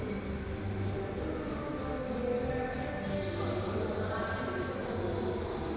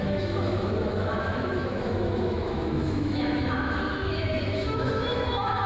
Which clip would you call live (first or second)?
first